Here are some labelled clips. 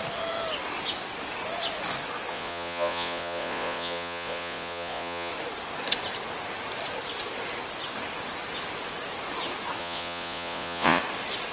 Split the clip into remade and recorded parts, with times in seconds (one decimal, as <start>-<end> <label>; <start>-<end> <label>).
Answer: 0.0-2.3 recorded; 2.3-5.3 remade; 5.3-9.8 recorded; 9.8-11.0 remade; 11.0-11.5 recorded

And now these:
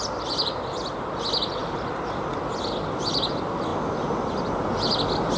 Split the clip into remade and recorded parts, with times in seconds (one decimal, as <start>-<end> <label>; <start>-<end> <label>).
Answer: 0.0-5.4 recorded

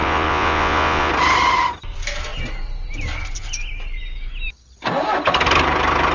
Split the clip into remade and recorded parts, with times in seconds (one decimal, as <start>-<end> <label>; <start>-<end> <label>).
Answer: 0.0-1.1 remade; 1.1-6.1 recorded

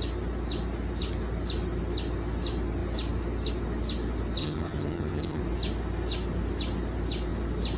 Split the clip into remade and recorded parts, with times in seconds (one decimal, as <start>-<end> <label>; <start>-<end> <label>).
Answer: 0.0-4.4 recorded; 4.4-5.4 remade; 5.4-7.8 recorded

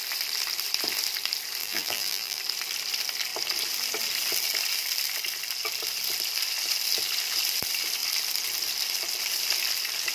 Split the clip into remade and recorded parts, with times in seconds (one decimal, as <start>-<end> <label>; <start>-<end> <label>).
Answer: 0.0-1.6 recorded; 1.6-2.4 remade; 2.4-10.1 recorded